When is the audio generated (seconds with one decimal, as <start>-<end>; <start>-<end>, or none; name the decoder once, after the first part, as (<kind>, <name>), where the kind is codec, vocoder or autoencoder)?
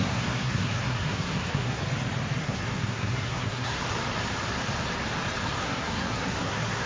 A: 0.0-1.8 (codec, SNAC); 2.4-3.8; 5.6-6.9